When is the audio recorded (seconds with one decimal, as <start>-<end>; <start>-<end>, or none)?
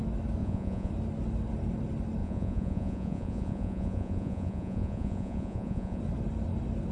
0.0-0.4; 0.9-2.2; 6.0-6.9